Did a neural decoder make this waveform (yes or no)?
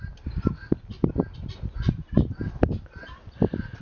no